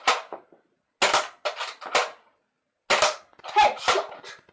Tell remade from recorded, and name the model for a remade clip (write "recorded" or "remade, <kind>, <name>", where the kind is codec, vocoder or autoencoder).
recorded